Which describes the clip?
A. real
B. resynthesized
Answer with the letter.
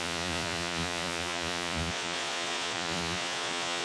B